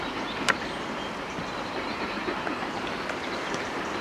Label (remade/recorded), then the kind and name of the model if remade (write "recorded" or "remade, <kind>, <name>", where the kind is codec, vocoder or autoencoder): recorded